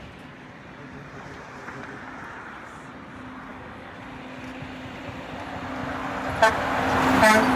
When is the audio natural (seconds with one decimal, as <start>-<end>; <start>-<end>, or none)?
0.0-3.5; 4.0-7.6